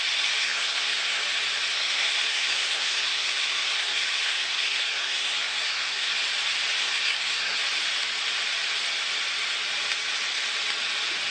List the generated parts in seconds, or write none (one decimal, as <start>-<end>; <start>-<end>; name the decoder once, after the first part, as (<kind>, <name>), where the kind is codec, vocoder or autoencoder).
0.4-1.2 (codec, SNAC); 1.7-6.2; 6.8-7.6